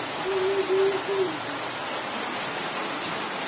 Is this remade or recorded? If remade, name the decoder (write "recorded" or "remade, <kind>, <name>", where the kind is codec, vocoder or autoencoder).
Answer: recorded